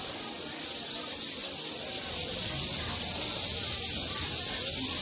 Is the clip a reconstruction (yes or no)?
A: no